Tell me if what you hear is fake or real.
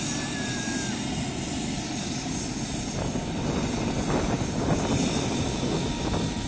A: real